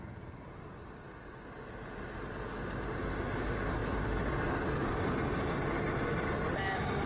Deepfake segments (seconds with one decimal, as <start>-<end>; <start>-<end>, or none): none